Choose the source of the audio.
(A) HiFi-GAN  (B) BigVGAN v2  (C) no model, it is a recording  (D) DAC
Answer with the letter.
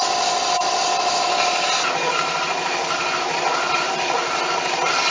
C